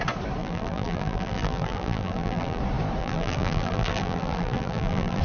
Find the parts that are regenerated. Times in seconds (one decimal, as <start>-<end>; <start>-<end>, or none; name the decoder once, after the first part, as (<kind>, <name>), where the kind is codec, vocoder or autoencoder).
0.4-2.6 (vocoder, BigVGAN v2); 3.0-5.2